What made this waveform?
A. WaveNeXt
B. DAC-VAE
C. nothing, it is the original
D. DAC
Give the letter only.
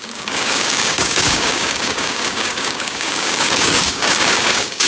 D